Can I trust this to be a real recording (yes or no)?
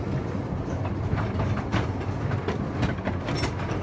yes